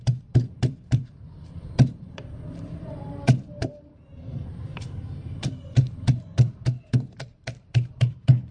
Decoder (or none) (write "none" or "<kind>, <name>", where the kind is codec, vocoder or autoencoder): vocoder, BigVGAN v2